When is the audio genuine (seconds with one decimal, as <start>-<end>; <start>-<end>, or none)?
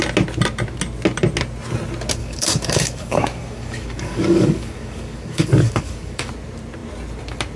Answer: 0.0-2.2; 6.3-7.6